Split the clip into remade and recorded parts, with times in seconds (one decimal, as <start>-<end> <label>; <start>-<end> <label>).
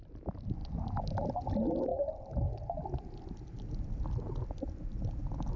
0.0-5.6 recorded